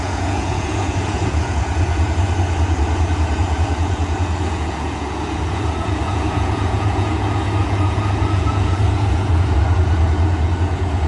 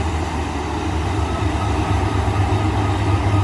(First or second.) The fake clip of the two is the first